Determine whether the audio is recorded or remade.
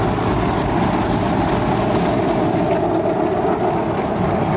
recorded